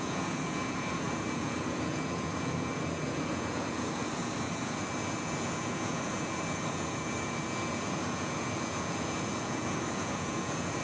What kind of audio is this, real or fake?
fake